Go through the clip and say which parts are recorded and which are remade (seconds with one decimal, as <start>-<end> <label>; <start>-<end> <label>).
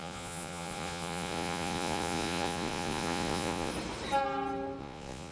0.0-3.7 remade; 3.7-4.8 recorded; 4.8-5.3 remade